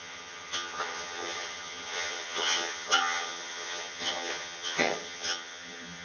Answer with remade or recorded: remade